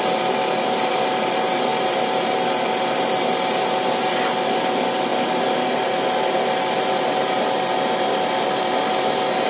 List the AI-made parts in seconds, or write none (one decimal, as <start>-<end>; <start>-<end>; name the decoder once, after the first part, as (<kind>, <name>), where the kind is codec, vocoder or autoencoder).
none